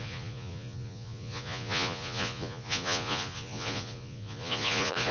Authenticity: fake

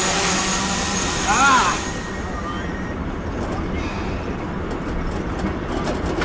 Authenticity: real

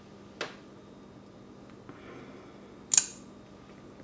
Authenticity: real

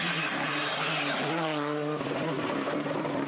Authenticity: real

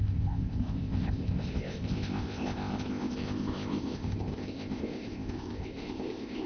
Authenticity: fake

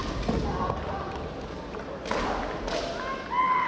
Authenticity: real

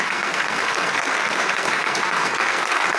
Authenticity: fake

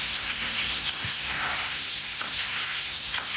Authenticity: fake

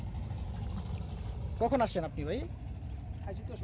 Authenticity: real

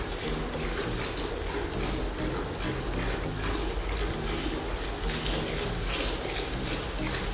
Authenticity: real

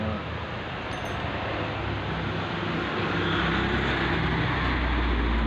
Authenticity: real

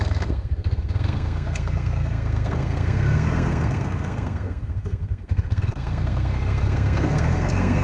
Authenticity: fake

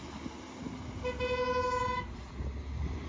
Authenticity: real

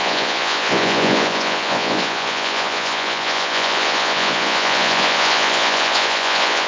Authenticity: fake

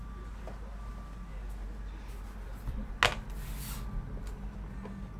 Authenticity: real